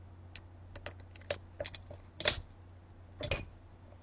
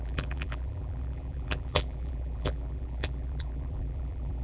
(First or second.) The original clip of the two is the first